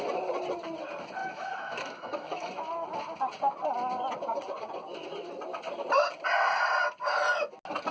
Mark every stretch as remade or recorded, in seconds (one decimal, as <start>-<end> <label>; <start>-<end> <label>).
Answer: 0.0-1.2 recorded; 1.2-2.5 remade; 2.5-7.9 recorded